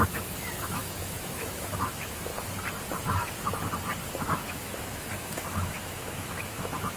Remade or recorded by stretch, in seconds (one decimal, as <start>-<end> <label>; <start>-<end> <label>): 0.0-2.3 remade; 2.3-4.2 recorded; 4.2-7.0 remade